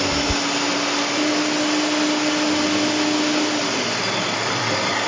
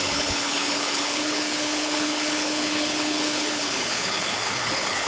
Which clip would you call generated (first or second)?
second